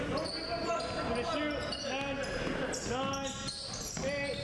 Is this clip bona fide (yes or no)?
yes